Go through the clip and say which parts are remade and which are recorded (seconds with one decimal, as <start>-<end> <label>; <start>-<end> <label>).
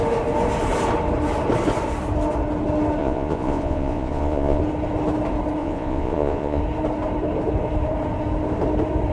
0.0-3.0 recorded; 3.0-4.6 remade; 4.6-5.6 recorded; 5.6-6.6 remade; 6.6-9.1 recorded